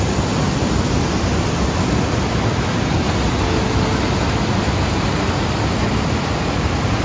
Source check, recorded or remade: recorded